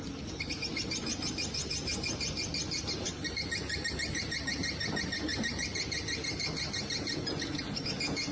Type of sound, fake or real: real